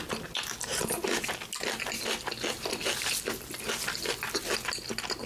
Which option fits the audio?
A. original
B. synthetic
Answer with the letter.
A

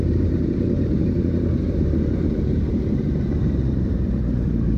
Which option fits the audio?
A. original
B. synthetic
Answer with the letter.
B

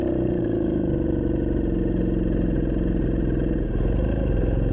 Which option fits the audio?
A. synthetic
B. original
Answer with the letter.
B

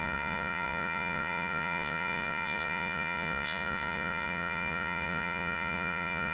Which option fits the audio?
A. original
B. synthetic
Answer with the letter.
B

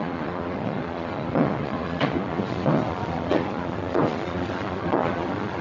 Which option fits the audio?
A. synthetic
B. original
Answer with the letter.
A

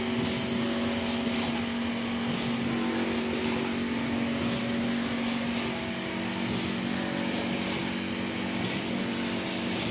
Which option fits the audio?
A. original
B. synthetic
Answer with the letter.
A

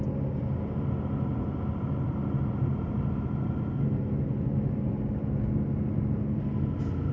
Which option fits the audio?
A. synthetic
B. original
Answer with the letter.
B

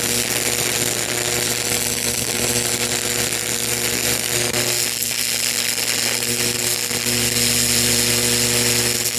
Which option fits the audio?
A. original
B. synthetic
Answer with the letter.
A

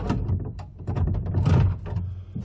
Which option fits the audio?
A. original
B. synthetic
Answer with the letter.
A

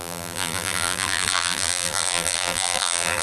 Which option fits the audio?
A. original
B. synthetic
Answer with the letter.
B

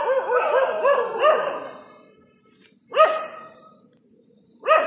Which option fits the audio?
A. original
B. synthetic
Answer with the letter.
B